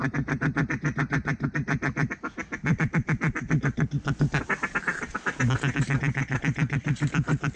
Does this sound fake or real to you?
real